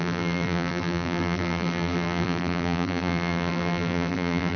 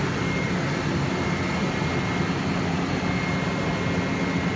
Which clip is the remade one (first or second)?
first